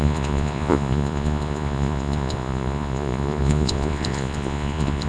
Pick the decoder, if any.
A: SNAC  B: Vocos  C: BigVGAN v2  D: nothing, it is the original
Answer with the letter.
B